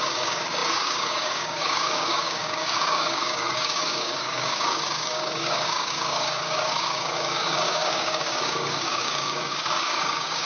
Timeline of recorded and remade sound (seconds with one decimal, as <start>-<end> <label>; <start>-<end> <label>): 0.0-10.5 remade